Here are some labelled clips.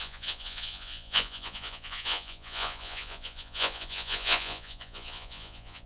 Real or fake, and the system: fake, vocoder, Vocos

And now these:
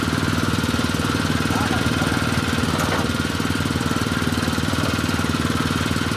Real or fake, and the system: real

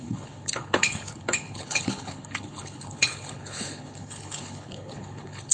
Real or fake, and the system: fake, codec, HILCodec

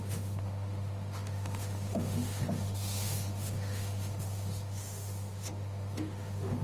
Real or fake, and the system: fake, autoencoder, DAC-VAE